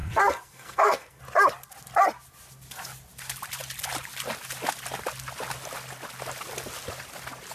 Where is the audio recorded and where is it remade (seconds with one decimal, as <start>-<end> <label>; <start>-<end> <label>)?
0.0-1.2 remade; 1.2-7.5 recorded